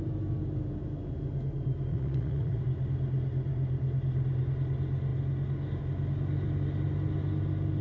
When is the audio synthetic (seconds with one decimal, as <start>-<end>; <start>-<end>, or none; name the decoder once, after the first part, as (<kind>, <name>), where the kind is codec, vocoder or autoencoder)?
1.9-2.6 (vocoder, Vocos)